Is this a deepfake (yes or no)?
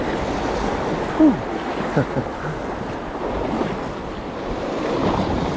no